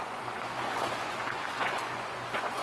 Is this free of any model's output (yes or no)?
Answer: no